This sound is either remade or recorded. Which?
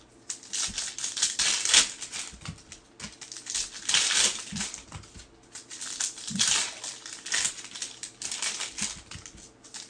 recorded